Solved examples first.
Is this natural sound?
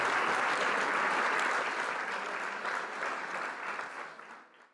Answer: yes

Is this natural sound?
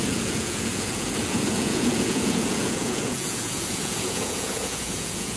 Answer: no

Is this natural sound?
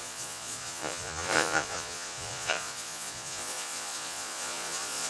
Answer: no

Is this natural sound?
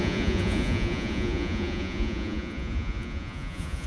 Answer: no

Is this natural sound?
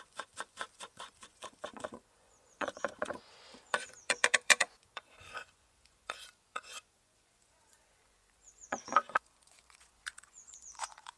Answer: no